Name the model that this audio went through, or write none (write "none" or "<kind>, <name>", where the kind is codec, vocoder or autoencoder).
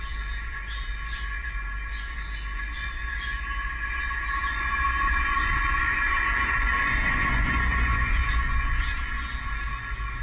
vocoder, Vocos